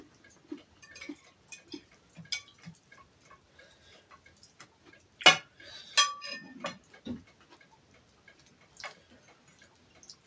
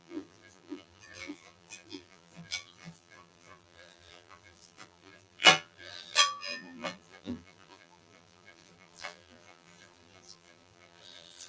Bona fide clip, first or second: first